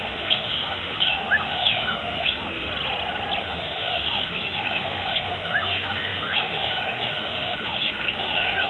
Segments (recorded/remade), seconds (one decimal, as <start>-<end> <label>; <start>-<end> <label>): 0.0-2.7 remade; 2.7-3.4 recorded; 3.4-8.7 remade